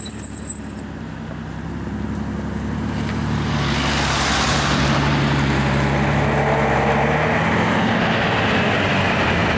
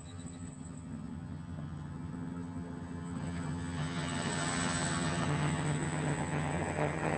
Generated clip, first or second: second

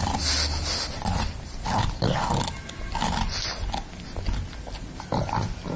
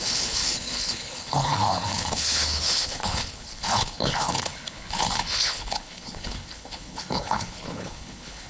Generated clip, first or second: second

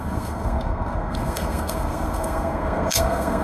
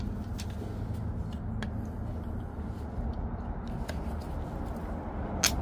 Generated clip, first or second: first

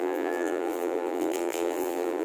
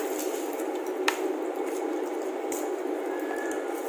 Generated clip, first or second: first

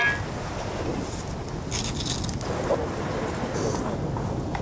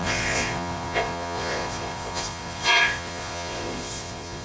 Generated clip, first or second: second